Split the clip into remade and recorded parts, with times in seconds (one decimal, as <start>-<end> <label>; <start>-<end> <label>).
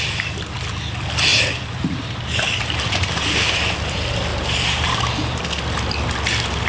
0.0-1.3 recorded; 1.3-3.1 remade; 3.1-4.3 recorded; 4.3-5.4 remade; 5.4-6.7 recorded